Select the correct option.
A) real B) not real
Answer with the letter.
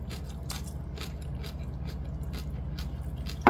A